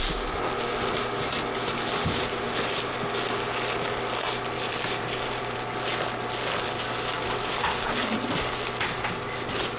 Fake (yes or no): no